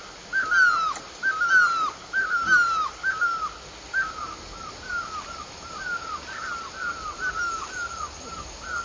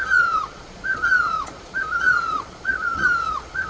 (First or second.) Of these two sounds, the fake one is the second